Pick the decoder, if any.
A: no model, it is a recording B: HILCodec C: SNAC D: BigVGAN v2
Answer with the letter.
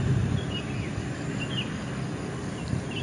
A